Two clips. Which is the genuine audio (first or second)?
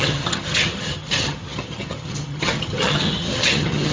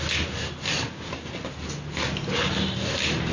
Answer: second